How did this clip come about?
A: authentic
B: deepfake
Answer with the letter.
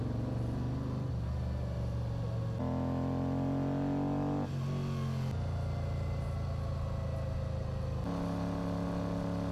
A